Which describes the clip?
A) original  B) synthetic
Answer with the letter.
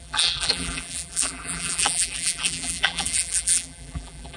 B